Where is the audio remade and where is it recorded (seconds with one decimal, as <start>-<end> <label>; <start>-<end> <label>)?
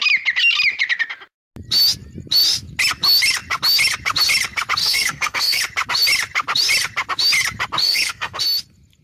0.0-4.8 recorded; 4.8-5.6 remade; 5.6-7.8 recorded; 7.8-8.4 remade; 8.4-9.0 recorded